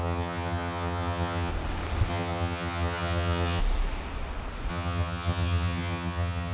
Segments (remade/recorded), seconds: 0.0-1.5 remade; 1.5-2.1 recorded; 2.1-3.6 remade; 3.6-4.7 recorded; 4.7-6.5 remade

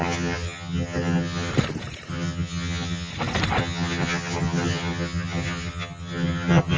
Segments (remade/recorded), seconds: 0.0-1.5 remade; 1.5-2.1 recorded; 2.1-3.1 remade; 3.1-3.6 recorded; 3.6-6.8 remade

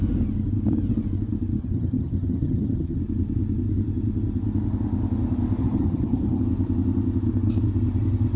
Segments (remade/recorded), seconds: 0.0-1.6 recorded; 1.6-3.0 remade; 3.0-5.6 recorded; 5.6-6.4 remade; 6.4-8.4 recorded